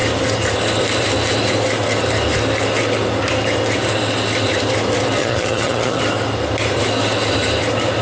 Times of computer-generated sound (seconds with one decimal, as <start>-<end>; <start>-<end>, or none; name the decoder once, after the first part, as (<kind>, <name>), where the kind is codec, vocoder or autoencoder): 5.2-6.0 (vocoder, HiFi-GAN)